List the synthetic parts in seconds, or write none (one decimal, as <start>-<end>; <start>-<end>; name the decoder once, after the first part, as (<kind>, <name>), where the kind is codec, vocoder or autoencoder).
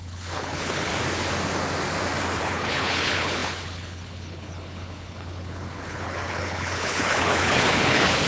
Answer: 0.0-0.9 (codec, HILCodec); 2.4-8.3